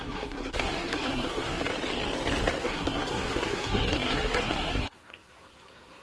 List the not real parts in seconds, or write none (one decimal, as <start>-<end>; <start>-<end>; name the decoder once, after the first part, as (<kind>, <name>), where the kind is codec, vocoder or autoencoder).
0.0-1.7 (codec, SNAC); 2.6-6.0